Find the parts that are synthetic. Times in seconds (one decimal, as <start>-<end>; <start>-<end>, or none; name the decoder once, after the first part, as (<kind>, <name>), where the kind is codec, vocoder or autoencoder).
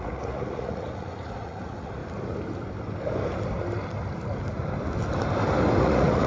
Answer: 0.0-2.0 (vocoder, Vocos); 5.8-6.3